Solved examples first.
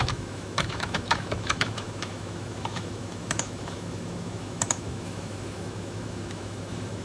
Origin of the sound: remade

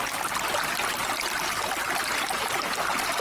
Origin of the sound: recorded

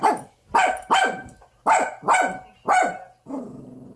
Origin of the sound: recorded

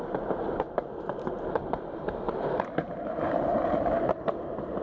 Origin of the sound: remade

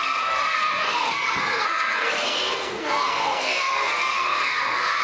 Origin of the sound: remade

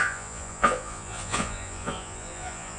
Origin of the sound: remade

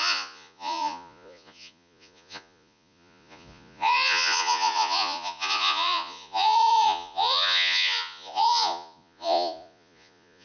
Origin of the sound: remade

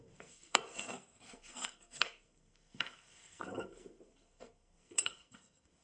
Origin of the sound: remade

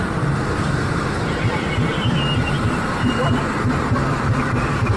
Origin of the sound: remade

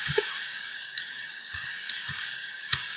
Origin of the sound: remade